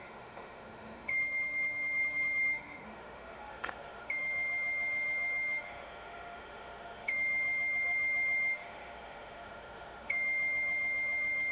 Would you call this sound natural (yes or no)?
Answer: no